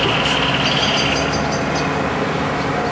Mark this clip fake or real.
real